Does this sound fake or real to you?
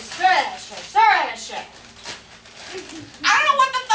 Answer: real